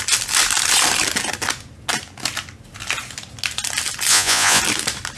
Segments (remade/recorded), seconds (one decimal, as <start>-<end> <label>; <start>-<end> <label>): 0.0-4.1 recorded; 4.1-4.6 remade; 4.6-5.2 recorded